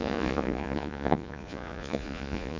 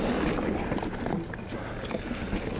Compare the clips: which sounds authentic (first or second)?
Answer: second